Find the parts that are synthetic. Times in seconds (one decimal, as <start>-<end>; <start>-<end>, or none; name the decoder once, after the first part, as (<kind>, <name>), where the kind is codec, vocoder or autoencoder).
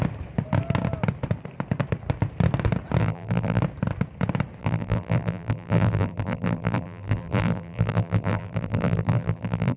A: 3.0-3.6 (vocoder, BigVGAN v2); 4.6-9.8